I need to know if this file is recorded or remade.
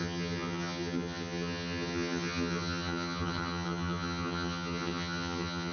remade